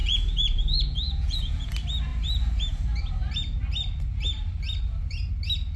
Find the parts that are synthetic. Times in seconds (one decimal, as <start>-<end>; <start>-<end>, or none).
0.0-1.7